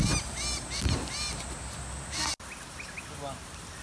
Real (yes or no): yes